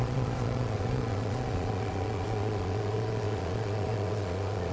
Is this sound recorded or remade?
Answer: remade